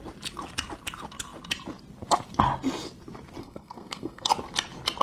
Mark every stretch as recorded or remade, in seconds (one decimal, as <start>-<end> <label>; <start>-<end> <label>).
0.0-3.4 recorded; 3.4-4.3 remade; 4.3-5.0 recorded